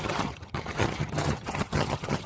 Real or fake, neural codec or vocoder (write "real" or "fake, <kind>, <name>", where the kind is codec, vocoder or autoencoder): fake, vocoder, HiFi-GAN